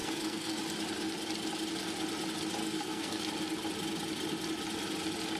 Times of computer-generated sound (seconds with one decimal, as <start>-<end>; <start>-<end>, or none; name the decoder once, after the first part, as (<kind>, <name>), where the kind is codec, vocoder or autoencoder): 0.0-0.6 (codec, SNAC); 2.6-3.2